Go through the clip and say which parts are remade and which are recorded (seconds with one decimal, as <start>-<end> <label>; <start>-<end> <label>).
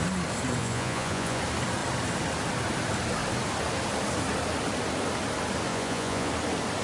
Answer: 0.0-0.6 recorded; 0.6-1.4 remade; 1.4-5.7 recorded; 5.7-6.3 remade; 6.3-6.8 recorded